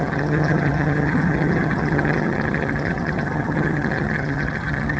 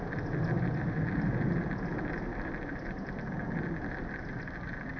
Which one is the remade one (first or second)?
first